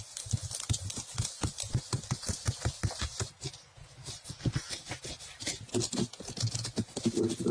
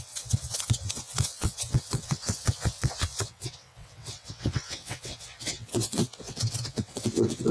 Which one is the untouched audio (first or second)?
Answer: first